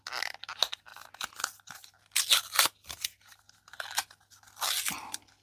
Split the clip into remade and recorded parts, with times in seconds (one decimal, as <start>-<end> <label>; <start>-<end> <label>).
0.0-5.4 recorded